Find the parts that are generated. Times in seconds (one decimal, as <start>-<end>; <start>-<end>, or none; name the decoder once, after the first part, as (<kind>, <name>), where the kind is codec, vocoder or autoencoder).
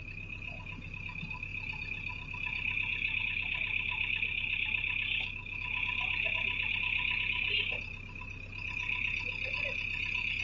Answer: none